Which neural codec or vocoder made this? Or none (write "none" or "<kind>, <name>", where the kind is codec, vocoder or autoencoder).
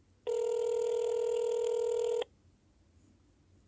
none